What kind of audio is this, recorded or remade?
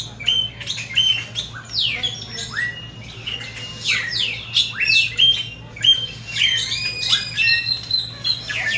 recorded